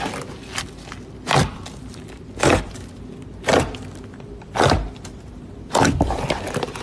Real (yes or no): yes